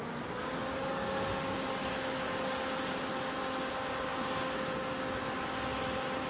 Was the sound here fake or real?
real